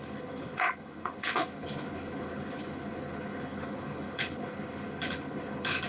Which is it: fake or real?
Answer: fake